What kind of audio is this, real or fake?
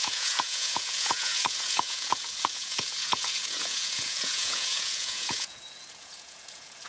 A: fake